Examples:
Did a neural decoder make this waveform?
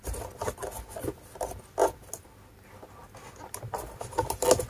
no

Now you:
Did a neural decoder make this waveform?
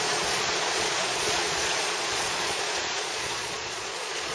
yes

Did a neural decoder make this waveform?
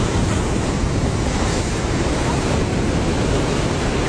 no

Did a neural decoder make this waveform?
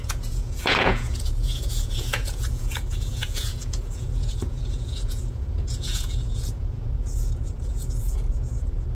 yes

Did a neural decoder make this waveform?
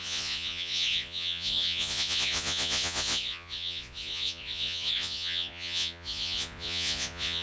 yes